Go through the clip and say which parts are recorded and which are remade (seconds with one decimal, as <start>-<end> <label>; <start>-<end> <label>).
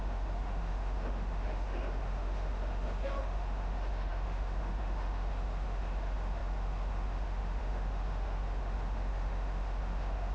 0.0-10.3 remade